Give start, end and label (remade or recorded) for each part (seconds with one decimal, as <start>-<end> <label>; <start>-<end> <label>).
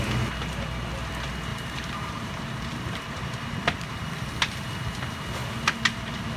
0.0-1.5 recorded; 1.5-3.4 remade; 3.4-6.4 recorded